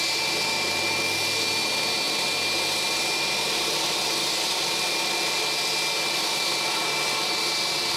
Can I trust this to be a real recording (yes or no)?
yes